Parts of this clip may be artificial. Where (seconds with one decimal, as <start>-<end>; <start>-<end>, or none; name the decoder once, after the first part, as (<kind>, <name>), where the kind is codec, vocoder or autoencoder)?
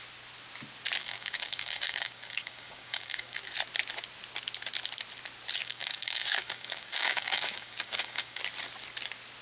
1.0-3.4 (codec, DAC); 5.6-8.4